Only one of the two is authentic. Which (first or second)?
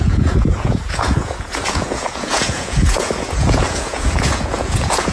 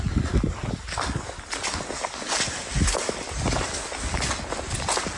second